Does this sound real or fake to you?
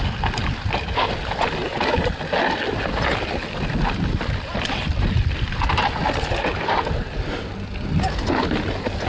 real